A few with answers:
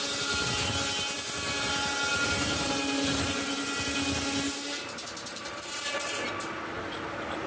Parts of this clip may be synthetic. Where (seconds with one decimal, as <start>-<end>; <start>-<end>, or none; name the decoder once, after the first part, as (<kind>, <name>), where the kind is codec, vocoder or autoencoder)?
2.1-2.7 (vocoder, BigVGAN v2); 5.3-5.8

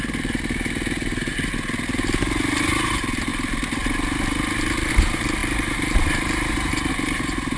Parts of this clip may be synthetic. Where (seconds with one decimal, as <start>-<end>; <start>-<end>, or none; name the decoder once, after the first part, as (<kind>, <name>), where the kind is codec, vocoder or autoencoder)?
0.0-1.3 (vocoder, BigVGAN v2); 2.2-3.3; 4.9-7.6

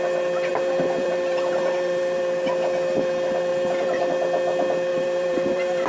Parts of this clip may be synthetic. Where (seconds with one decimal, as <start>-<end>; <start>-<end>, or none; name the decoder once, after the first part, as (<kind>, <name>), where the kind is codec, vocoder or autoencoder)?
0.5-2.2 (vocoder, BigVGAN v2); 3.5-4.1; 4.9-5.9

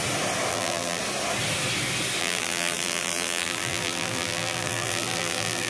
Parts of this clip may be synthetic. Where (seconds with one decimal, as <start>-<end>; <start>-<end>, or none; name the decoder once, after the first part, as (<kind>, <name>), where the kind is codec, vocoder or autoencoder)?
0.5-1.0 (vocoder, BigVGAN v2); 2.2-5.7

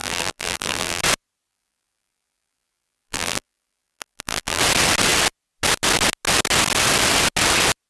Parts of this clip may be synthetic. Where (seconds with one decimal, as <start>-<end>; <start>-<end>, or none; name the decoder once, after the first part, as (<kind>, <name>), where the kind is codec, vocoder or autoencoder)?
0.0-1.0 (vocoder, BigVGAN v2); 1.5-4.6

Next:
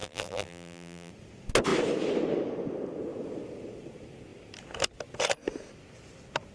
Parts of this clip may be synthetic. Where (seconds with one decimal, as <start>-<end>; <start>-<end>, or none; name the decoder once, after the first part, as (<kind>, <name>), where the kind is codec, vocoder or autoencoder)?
0.0-1.1 (vocoder, BigVGAN v2)

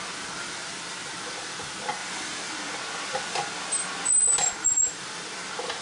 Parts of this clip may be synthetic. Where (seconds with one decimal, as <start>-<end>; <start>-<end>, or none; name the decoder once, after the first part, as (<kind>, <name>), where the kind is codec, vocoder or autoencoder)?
0.0-2.0 (vocoder, BigVGAN v2); 4.2-5.8

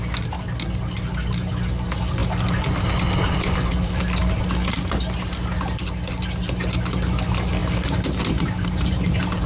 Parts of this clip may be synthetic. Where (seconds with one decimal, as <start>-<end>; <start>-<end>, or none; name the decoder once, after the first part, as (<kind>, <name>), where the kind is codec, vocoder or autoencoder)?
7.6-8.9 (vocoder, BigVGAN v2)